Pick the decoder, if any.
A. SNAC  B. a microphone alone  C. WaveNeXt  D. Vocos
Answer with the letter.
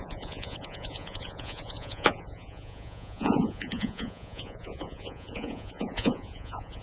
D